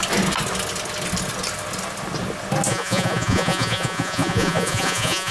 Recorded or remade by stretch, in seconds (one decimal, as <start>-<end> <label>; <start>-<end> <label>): 0.0-2.7 recorded; 2.7-5.3 remade